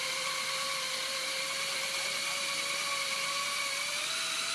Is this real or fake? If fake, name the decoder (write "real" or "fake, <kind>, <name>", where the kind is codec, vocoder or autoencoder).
real